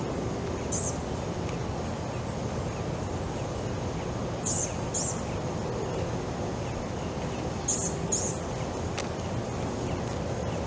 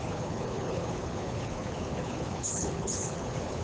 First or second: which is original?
first